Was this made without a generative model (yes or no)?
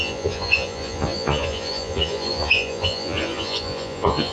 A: no